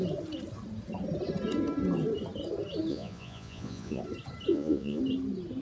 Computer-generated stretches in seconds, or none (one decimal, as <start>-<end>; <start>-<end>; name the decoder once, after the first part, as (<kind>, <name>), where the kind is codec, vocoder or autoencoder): 2.9-4.0 (vocoder, Vocos); 4.5-5.0

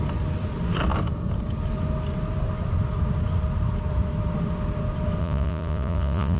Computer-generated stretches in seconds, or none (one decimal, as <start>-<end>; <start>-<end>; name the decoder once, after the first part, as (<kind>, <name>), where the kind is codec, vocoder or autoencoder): 5.2-6.4 (vocoder, Vocos)

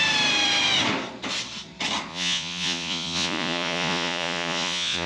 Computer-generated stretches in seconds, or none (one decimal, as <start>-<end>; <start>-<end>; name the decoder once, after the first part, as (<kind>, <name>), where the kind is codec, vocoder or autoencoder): 2.1-5.1 (vocoder, Vocos)